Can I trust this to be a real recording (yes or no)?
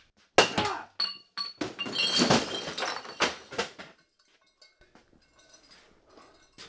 yes